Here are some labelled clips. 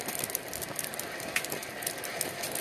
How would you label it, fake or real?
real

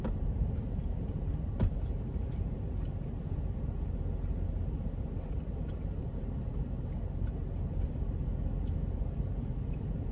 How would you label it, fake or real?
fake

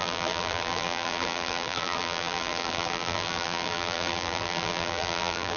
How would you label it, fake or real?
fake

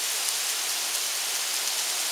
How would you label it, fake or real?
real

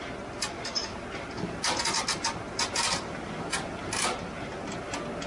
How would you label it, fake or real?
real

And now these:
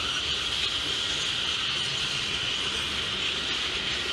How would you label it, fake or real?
real